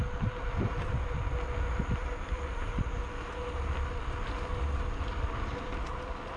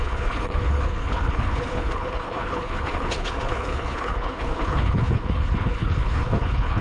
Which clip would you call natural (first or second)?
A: first